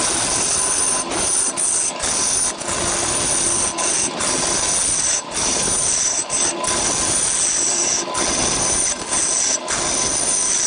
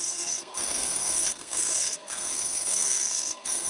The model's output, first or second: second